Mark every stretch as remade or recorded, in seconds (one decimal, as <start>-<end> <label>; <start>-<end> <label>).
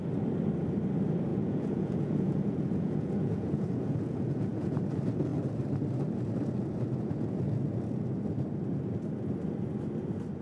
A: 0.0-1.3 recorded; 1.3-4.8 remade; 4.8-10.4 recorded